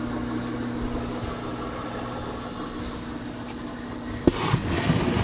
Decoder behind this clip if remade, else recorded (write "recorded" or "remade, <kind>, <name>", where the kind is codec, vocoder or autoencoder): recorded